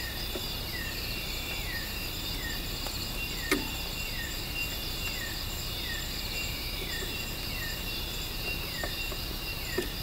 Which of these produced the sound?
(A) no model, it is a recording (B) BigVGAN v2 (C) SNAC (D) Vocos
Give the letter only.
B